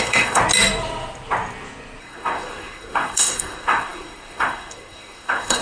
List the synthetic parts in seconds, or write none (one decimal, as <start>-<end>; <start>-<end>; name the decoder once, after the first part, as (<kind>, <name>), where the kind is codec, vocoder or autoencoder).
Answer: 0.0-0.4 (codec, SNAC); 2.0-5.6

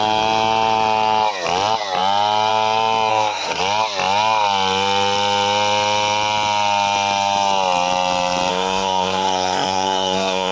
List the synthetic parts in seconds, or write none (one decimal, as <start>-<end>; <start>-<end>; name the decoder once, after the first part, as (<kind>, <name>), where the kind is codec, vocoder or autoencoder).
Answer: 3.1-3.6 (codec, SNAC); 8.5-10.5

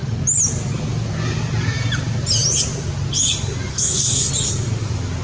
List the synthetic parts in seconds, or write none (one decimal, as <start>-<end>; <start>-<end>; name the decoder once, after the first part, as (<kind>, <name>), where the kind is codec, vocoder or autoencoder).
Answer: 3.7-4.3 (codec, SNAC)